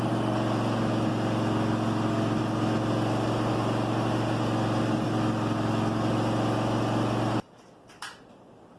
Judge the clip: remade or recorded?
recorded